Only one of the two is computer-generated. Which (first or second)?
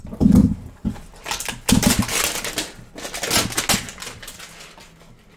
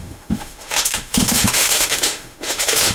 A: second